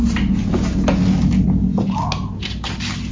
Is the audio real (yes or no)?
yes